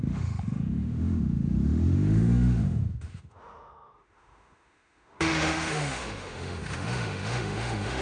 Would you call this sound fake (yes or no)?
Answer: yes